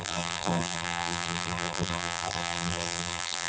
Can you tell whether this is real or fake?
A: fake